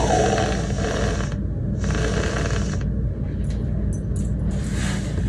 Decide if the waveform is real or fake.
real